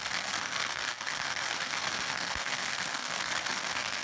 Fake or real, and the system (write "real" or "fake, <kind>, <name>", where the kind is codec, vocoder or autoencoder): fake, codec, SNAC